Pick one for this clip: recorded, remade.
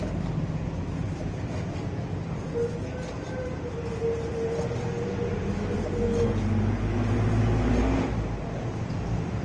recorded